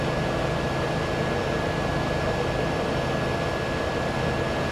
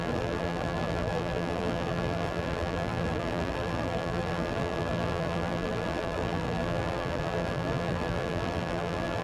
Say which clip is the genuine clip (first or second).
first